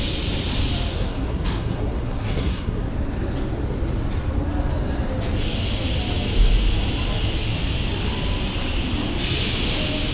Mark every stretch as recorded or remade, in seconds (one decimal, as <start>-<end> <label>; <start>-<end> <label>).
0.0-0.9 recorded; 0.9-2.9 remade; 2.9-10.1 recorded